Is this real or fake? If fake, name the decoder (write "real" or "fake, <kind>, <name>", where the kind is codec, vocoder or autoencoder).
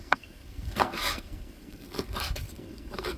fake, codec, SNAC